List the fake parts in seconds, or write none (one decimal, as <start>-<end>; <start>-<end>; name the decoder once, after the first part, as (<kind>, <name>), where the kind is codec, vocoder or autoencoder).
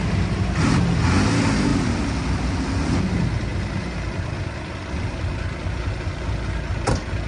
1.7-3.0 (vocoder, BigVGAN v2); 3.5-5.9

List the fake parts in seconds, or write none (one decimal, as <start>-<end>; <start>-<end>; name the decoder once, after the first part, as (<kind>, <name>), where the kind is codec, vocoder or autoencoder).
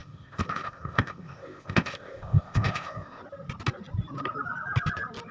0.0-3.2 (codec, ZipCodec)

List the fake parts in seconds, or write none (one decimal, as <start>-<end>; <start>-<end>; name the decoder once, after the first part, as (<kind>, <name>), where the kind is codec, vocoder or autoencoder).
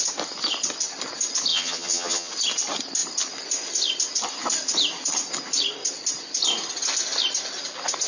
1.5-2.3 (vocoder, HiFi-GAN)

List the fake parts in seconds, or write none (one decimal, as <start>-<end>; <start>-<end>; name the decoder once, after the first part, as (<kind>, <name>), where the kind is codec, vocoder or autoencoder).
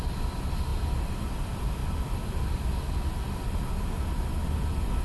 none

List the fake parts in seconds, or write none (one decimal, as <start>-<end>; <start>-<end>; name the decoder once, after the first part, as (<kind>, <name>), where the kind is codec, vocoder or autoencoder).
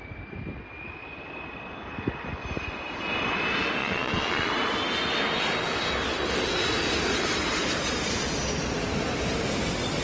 3.8-4.5 (vocoder, Vocos)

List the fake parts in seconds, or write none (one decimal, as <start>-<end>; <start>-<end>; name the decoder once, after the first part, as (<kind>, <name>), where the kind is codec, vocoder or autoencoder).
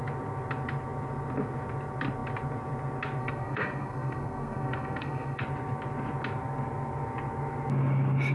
3.2-5.4 (codec, SNAC)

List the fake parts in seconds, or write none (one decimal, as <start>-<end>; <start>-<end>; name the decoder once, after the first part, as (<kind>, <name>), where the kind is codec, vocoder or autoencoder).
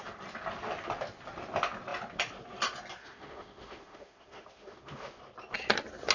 3.0-5.2 (autoencoder, DAC-VAE)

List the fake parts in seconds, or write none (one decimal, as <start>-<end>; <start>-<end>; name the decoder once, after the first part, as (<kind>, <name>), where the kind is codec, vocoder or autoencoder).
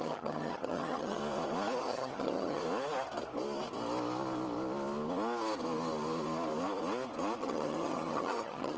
0.0-1.2 (vocoder, HiFi-GAN); 1.8-2.6; 7.4-8.8